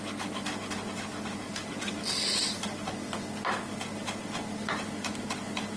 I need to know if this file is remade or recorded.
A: recorded